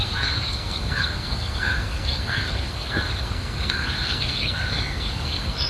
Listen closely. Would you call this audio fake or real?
fake